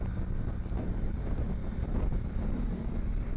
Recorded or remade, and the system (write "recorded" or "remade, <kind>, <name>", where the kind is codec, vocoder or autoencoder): recorded